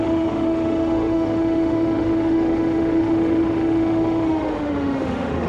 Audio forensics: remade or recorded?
remade